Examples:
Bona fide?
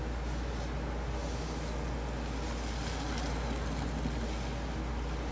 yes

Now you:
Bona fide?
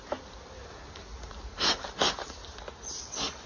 yes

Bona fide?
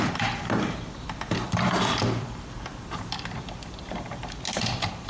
no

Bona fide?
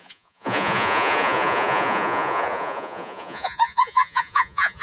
no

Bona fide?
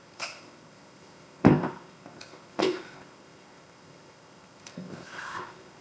no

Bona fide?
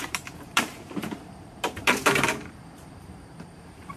no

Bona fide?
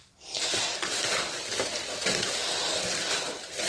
yes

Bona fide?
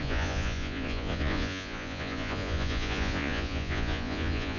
no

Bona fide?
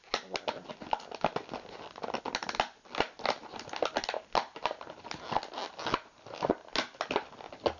yes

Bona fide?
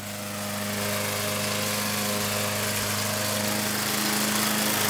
yes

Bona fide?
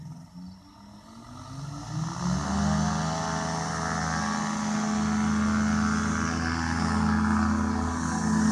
yes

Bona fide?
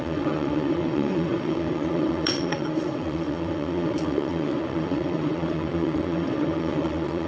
no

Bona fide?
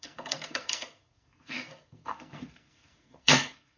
no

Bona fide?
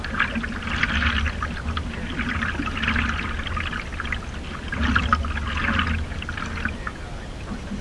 yes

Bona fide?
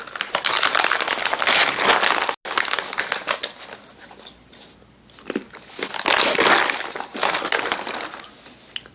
yes